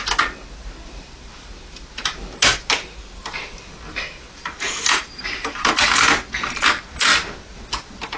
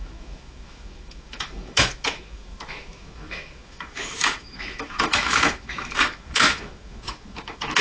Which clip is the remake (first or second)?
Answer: second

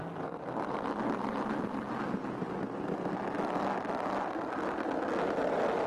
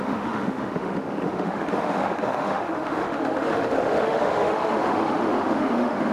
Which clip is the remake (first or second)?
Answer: second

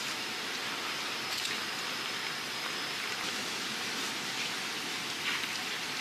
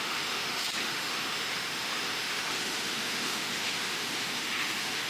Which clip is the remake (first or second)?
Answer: second